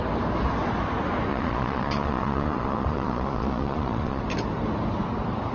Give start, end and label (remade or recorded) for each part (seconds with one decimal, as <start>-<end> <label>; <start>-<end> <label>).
0.0-1.3 recorded; 1.3-4.2 remade; 4.2-5.5 recorded